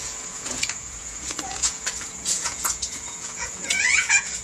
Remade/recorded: remade